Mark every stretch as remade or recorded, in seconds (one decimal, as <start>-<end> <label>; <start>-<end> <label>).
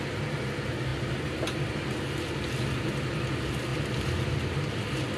0.0-5.2 recorded